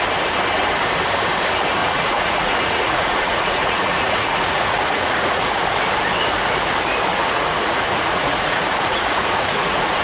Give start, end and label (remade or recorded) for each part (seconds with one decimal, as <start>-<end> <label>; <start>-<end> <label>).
0.0-1.8 recorded; 1.8-5.5 remade; 5.5-7.1 recorded; 7.1-10.0 remade